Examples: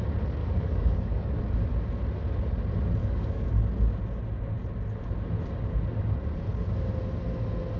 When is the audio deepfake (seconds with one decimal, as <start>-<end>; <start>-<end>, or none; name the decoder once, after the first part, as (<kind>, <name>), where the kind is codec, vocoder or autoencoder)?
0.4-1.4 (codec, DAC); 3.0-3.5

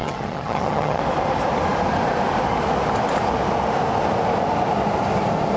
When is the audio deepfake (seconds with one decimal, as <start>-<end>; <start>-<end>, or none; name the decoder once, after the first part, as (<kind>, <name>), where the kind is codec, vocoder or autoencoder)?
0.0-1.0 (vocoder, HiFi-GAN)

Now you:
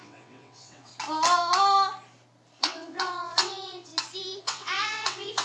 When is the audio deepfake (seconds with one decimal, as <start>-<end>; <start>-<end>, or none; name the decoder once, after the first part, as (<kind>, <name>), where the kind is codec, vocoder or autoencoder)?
0.0-0.9 (vocoder, WaveNeXt); 2.6-3.9; 4.4-5.4